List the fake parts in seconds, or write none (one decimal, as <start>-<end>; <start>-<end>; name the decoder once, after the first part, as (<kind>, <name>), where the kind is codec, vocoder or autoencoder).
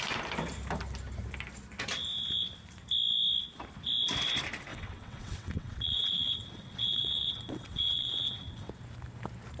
4.7-8.7 (vocoder, WaveNeXt)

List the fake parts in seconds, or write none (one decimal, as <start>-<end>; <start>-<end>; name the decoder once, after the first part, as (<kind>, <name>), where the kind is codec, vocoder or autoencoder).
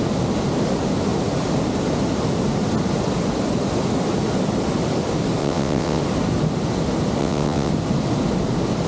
5.4-6.0 (vocoder, WaveNeXt); 7.2-7.7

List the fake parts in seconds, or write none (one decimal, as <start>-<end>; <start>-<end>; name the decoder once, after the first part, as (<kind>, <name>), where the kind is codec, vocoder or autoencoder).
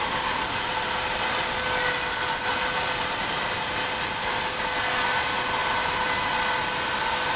none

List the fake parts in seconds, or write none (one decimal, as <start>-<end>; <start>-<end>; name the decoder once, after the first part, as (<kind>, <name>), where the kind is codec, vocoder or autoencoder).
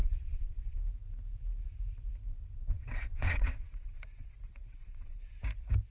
0.0-0.8 (vocoder, WaveNeXt); 2.3-5.2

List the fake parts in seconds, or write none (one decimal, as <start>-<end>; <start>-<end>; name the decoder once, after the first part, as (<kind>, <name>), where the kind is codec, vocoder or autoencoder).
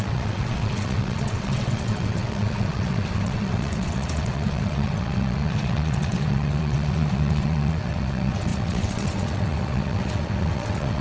0.0-11.0 (vocoder, WaveNeXt)